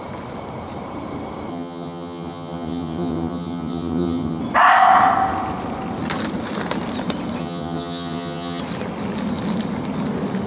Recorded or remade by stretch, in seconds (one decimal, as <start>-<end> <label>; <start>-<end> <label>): 0.0-1.5 recorded; 1.5-4.4 remade; 4.4-7.4 recorded; 7.4-8.6 remade; 8.6-10.5 recorded